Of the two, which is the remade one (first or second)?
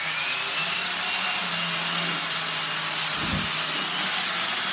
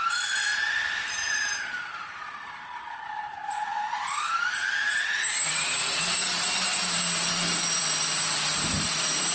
second